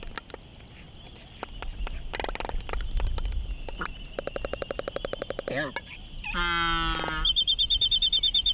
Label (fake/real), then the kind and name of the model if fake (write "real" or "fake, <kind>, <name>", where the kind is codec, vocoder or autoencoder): real